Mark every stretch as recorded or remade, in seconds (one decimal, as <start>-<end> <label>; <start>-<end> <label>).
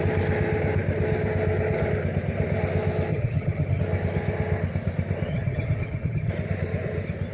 0.0-3.1 recorded; 3.1-3.8 remade; 3.8-5.3 recorded; 5.3-6.3 remade; 6.3-7.3 recorded